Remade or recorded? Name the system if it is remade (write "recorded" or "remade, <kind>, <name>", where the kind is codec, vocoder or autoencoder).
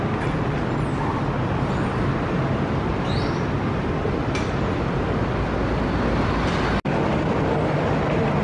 recorded